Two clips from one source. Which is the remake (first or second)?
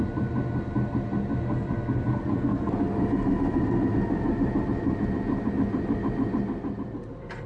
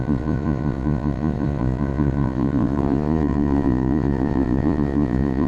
second